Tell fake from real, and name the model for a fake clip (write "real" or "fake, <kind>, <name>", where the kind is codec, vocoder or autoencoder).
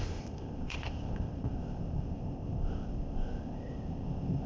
fake, codec, ZipCodec